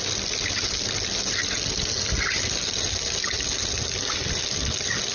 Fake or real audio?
real